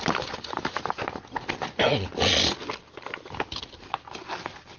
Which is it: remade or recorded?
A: recorded